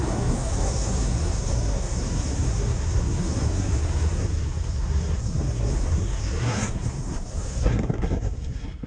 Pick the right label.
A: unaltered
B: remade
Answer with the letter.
B